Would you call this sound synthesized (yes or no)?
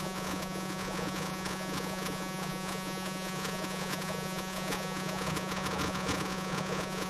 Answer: yes